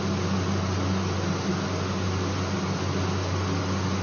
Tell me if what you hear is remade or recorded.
recorded